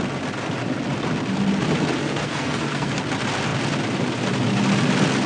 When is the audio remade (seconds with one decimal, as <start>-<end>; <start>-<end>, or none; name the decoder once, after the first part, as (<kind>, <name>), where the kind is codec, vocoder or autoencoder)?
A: 2.0-3.0 (codec, SNAC)